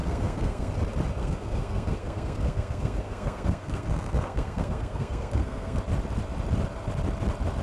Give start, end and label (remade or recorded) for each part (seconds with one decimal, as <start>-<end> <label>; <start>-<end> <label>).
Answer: 0.0-0.7 remade; 0.7-1.2 recorded; 1.2-5.8 remade; 5.8-7.6 recorded